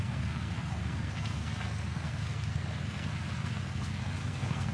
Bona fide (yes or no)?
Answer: no